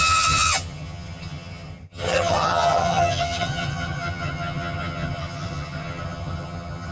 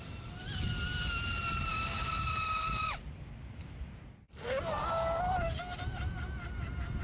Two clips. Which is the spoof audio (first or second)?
first